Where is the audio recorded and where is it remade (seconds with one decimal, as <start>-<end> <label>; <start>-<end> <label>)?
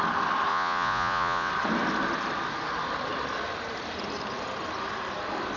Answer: 0.0-0.5 recorded; 0.5-1.5 remade; 1.5-5.6 recorded